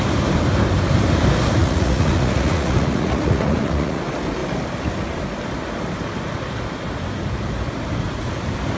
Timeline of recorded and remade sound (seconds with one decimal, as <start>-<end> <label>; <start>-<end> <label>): 0.0-1.6 recorded; 1.6-4.0 remade; 4.0-8.8 recorded